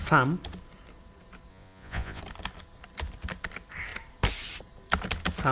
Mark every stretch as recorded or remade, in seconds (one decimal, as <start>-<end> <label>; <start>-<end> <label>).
0.0-1.5 recorded; 1.5-2.2 remade; 2.2-5.5 recorded